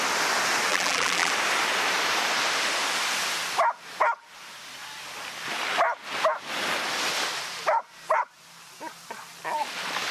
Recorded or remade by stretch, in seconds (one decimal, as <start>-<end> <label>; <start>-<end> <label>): 0.0-0.7 recorded; 0.7-1.3 remade; 1.3-10.1 recorded